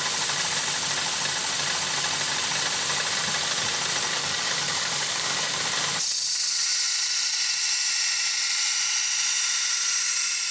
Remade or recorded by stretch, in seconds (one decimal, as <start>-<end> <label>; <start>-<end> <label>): 0.0-4.1 recorded; 4.1-5.6 remade; 5.6-10.5 recorded

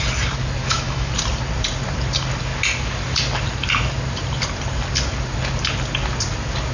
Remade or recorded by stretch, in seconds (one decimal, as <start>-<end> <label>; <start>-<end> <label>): 0.0-0.6 recorded; 0.6-1.1 remade; 1.1-6.7 recorded